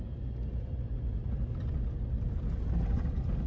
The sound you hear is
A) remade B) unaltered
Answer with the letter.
B